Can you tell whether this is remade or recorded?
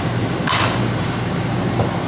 recorded